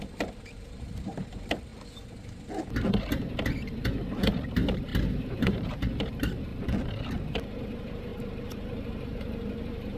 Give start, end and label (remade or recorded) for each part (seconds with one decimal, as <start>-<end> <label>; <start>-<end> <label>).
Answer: 0.0-1.7 remade; 1.7-4.5 recorded; 4.5-4.9 remade; 4.9-5.4 recorded; 5.4-6.5 remade; 6.5-7.6 recorded; 7.6-10.0 remade